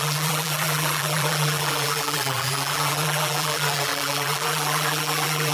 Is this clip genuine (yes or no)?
no